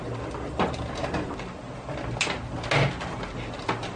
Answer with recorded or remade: recorded